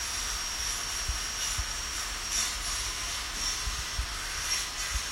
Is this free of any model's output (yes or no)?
yes